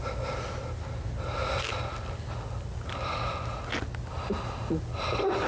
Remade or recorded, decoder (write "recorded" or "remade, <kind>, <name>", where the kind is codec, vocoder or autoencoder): recorded